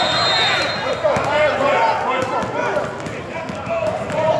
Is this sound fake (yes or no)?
no